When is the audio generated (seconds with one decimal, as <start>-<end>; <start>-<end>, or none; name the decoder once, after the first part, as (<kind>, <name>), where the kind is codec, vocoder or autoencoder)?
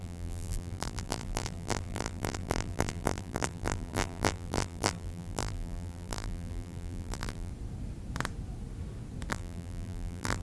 0.0-7.5 (vocoder, BigVGAN v2); 9.3-10.4